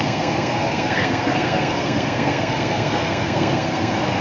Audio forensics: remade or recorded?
remade